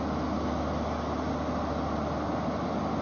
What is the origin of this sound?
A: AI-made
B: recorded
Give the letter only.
B